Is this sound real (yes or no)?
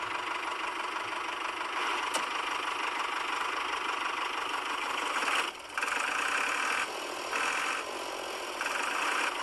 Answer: yes